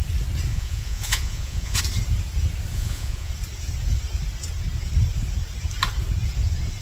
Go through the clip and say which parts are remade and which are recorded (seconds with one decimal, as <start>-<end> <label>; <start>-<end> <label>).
0.0-0.5 recorded; 0.5-1.8 remade; 1.8-2.7 recorded; 2.7-3.3 remade; 3.3-6.8 recorded